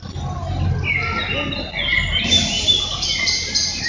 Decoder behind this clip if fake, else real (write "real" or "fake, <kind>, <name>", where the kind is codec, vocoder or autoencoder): real